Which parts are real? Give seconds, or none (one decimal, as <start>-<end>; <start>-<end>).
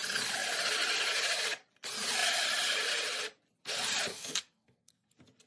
0.0-4.1; 5.1-5.5